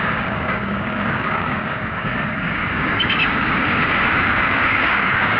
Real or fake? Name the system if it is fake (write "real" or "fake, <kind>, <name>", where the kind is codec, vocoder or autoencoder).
fake, codec, DAC